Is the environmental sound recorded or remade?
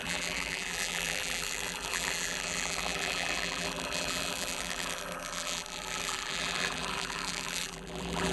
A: remade